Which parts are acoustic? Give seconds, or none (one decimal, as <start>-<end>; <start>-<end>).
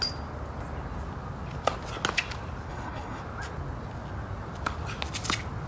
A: 0.0-2.7; 3.2-5.7